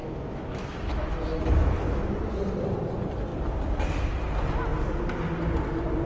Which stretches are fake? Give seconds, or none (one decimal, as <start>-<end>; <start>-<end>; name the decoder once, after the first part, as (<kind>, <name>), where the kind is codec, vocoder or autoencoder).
0.0-2.4 (autoencoder, DAC-VAE)